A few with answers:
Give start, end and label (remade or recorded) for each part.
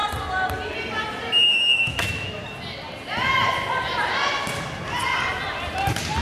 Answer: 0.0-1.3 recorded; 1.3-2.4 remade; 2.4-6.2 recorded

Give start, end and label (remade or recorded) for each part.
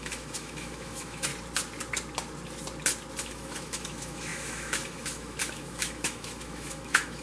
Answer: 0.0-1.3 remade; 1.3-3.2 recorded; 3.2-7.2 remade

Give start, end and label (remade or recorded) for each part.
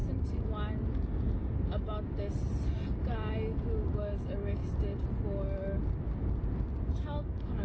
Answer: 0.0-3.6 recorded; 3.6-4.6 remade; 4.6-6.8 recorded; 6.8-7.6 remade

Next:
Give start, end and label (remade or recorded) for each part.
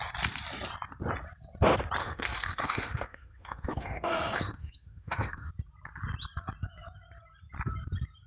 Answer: 0.0-2.0 recorded; 2.0-5.5 remade; 5.5-8.3 recorded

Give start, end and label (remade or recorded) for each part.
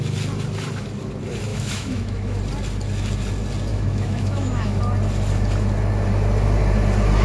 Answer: 0.0-1.5 recorded; 1.5-2.4 remade; 2.4-3.7 recorded; 3.7-4.8 remade; 4.8-7.2 recorded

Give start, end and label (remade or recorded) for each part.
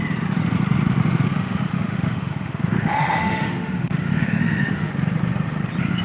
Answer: 0.0-1.3 recorded; 1.3-4.9 remade; 4.9-6.0 recorded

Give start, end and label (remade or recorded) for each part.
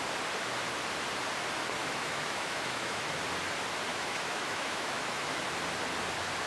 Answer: 0.0-1.8 recorded; 1.8-3.0 remade; 3.0-3.9 recorded; 3.9-5.4 remade; 5.4-6.5 recorded